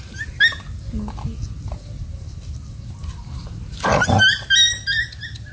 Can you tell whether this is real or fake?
real